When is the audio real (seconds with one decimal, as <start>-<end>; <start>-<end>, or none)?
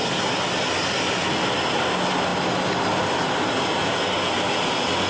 0.0-5.1